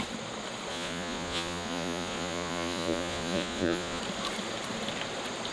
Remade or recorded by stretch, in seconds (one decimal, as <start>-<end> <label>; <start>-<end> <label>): 0.0-0.7 recorded; 0.7-4.0 remade; 4.0-5.5 recorded